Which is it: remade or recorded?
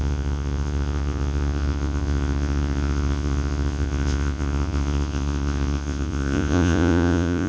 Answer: remade